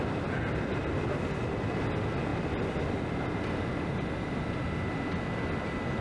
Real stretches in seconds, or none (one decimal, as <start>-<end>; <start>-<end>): 0.0-6.0